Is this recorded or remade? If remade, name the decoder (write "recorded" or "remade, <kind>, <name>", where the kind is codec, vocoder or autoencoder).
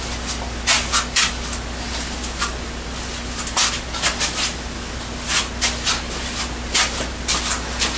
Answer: recorded